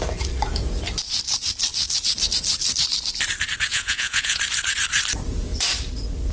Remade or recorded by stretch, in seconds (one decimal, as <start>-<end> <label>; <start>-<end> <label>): 0.0-3.7 recorded; 3.7-4.4 remade; 4.4-6.3 recorded